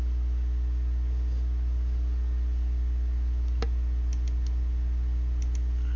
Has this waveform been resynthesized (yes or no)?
no